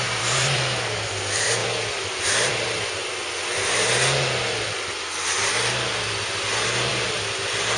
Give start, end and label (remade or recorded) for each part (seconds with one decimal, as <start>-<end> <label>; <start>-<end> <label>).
0.0-3.0 remade; 3.0-6.9 recorded; 6.9-7.8 remade